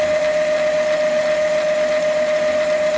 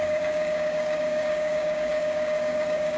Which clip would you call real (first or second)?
first